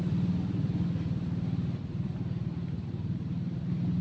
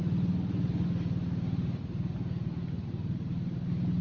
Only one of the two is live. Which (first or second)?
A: second